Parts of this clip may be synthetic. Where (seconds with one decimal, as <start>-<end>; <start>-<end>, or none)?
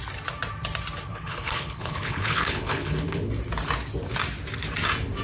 1.1-3.3